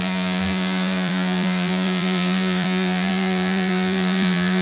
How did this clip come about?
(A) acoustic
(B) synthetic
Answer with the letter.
B